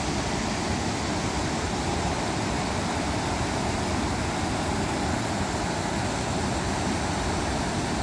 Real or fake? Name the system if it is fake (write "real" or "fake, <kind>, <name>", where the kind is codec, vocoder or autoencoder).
real